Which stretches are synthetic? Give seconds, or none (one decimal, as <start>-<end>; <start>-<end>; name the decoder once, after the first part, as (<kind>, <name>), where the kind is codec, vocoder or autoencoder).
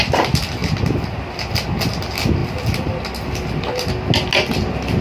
none